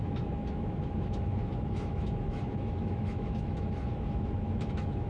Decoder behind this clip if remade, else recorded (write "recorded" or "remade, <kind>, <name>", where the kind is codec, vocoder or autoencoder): remade, autoencoder, DAC-VAE